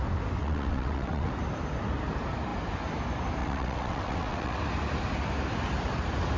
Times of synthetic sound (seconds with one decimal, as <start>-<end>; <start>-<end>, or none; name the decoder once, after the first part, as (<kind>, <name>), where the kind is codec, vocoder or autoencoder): 0.4-1.3 (vocoder, WaveNeXt); 3.4-4.6